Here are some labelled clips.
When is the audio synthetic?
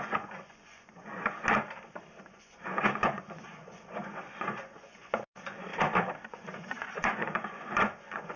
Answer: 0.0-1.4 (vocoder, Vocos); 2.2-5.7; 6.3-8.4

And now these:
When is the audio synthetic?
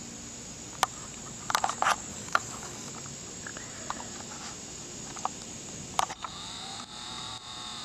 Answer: 2.1-2.9 (codec, DAC)